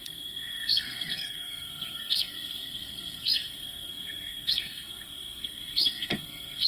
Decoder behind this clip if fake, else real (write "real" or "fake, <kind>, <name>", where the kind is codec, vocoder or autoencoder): fake, codec, SNAC